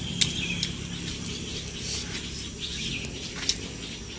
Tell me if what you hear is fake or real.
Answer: real